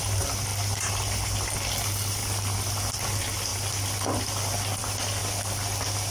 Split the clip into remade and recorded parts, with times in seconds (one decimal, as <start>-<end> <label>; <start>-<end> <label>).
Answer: 0.0-0.5 recorded; 0.5-1.5 remade; 1.5-3.5 recorded; 3.5-4.8 remade; 4.8-5.2 recorded; 5.2-6.1 remade